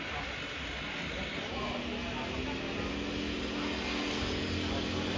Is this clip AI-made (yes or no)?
no